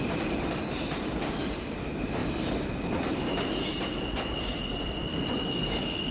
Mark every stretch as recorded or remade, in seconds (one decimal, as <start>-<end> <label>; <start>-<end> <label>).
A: 0.0-5.1 recorded; 5.1-6.1 remade